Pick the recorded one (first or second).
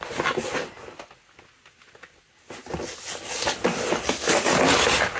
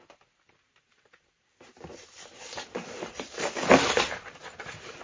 first